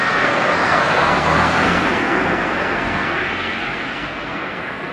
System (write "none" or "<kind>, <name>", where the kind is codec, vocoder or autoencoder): codec, SNAC